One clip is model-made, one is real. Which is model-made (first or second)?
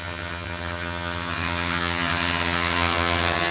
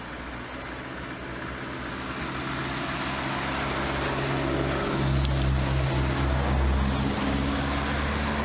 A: first